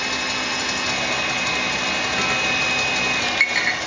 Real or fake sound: real